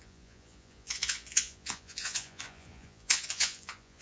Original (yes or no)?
no